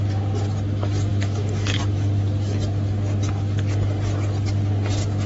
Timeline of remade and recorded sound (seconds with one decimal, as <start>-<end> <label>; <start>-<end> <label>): 0.0-1.1 recorded; 1.1-1.8 remade; 1.8-5.3 recorded